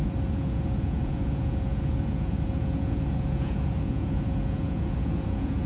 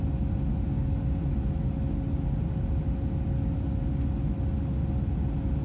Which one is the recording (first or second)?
second